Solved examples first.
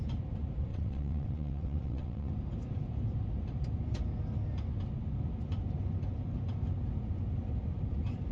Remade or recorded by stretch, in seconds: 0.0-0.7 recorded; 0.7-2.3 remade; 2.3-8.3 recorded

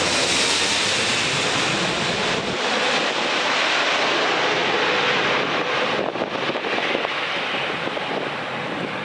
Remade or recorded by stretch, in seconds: 0.0-9.0 recorded

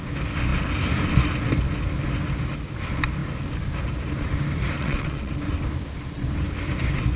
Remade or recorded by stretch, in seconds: 0.0-4.8 recorded; 4.8-5.3 remade; 5.3-7.2 recorded

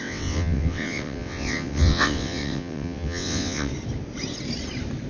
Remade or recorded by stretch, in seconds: 0.0-3.7 remade; 3.7-5.1 recorded